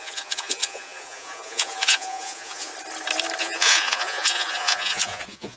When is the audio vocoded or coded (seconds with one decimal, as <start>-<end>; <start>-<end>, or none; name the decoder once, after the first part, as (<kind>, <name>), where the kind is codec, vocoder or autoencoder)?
0.0-2.7 (vocoder, Vocos); 3.4-5.6